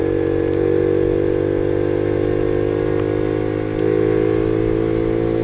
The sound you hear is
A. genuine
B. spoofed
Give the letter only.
A